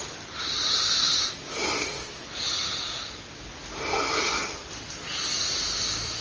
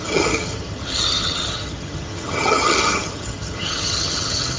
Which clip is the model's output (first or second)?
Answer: second